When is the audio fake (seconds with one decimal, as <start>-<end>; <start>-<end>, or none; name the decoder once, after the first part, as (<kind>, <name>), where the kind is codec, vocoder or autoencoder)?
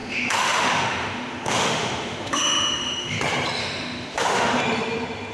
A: 0.0-3.2 (autoencoder, DAC-VAE); 3.6-4.6